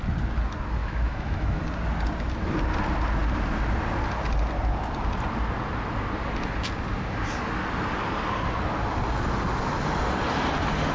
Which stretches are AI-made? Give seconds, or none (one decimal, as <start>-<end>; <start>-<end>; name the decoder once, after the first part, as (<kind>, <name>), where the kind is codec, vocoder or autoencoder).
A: 0.8-1.6 (autoencoder, DAC-VAE)